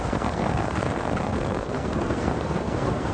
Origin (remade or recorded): remade